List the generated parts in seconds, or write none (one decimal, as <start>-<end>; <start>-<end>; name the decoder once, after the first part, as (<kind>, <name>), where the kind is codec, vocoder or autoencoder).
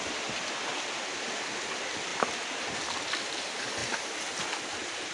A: none